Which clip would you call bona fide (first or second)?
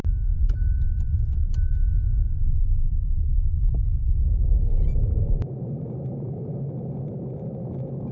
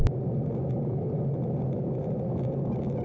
second